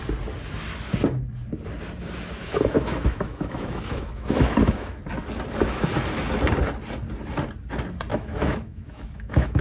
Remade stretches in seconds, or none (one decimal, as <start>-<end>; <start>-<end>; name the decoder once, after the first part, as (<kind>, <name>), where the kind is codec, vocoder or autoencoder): 2.4-5.0 (autoencoder, DAC-VAE); 8.1-9.6